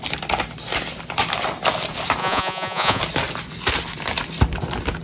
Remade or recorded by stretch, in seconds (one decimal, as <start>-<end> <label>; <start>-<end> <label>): 0.0-2.2 recorded; 2.2-3.0 remade; 3.0-5.0 recorded